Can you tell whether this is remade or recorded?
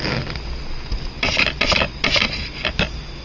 recorded